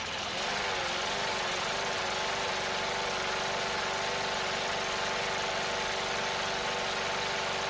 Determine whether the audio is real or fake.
real